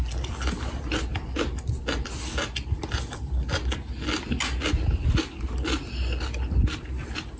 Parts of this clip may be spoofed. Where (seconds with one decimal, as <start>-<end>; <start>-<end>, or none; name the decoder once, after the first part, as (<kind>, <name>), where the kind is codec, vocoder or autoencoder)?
none